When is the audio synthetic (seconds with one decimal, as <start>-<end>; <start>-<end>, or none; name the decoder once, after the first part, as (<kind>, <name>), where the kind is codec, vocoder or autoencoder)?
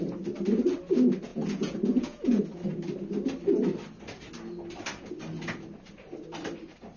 1.3-2.4 (vocoder, Vocos)